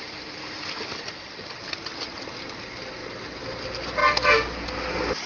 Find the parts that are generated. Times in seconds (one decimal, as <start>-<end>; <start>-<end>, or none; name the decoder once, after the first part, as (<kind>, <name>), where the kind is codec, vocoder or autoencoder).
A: none